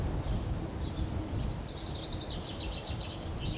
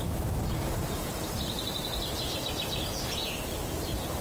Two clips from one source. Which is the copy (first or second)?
second